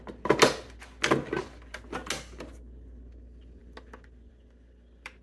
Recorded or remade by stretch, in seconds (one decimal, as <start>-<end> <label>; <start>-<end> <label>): 0.0-5.2 recorded